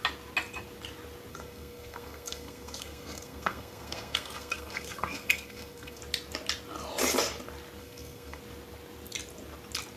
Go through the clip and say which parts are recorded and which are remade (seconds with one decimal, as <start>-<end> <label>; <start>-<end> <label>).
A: 0.0-1.3 recorded; 1.3-6.0 remade; 6.0-7.8 recorded; 7.8-8.4 remade; 8.4-10.0 recorded